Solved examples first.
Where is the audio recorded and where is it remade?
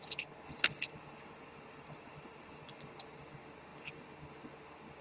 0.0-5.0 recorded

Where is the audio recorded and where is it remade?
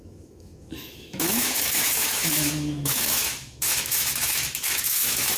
0.0-5.4 remade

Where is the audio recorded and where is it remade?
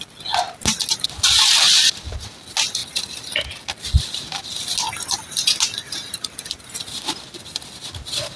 0.0-8.4 recorded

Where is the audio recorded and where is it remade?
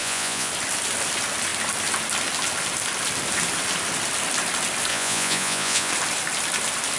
0.0-0.5 remade; 0.5-4.9 recorded; 4.9-5.9 remade; 5.9-7.0 recorded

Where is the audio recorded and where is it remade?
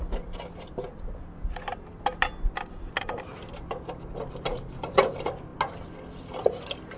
0.0-7.0 recorded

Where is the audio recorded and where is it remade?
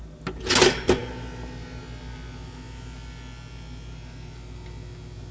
0.0-5.3 recorded